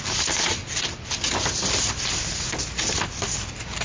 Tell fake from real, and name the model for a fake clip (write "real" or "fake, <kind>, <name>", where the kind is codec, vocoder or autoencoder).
real